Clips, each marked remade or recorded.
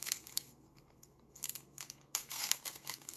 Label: remade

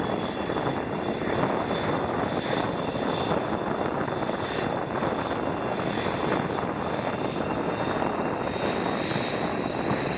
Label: recorded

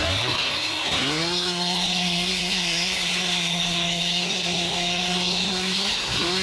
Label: remade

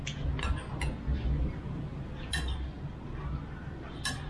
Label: recorded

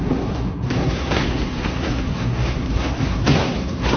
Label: remade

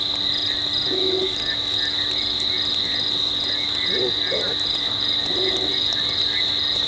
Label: recorded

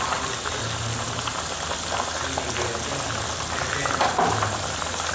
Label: recorded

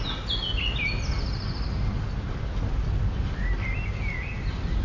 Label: recorded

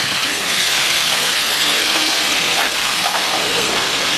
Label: remade